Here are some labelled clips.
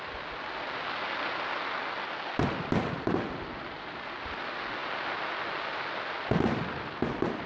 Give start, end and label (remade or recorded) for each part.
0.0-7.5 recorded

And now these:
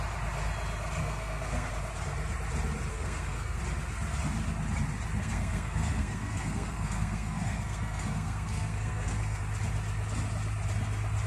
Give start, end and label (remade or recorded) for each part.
0.0-1.0 recorded; 1.0-1.7 remade; 1.7-2.9 recorded; 2.9-3.6 remade; 3.6-5.2 recorded; 5.2-9.4 remade; 9.4-11.3 recorded

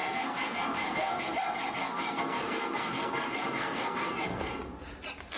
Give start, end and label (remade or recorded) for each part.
0.0-1.2 remade; 1.2-1.8 recorded; 1.8-4.5 remade; 4.5-5.4 recorded

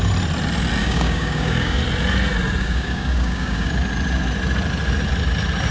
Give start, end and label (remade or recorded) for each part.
0.0-0.8 recorded; 0.8-1.8 remade; 1.8-2.6 recorded; 2.6-3.7 remade; 3.7-5.7 recorded

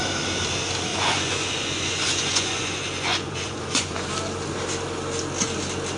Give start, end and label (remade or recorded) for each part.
0.0-0.9 recorded; 0.9-4.1 remade; 4.1-6.0 recorded